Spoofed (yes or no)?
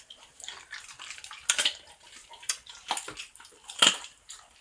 no